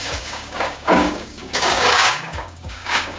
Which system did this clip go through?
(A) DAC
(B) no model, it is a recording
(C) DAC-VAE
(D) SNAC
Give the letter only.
A